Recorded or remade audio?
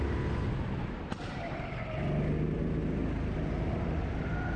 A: recorded